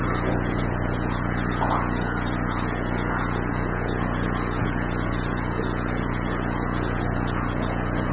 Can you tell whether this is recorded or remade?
remade